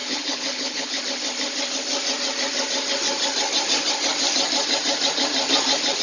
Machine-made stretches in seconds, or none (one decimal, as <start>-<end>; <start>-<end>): 0.0-1.0

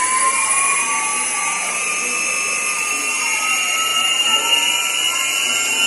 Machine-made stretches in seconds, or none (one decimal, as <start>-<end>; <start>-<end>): 1.1-2.0; 3.9-4.4

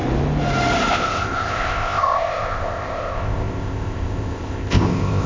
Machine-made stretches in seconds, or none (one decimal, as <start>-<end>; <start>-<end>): 0.9-5.3